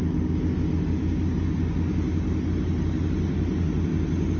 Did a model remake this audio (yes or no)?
no